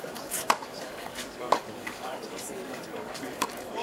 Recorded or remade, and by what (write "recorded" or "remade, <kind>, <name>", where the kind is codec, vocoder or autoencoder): remade, codec, DAC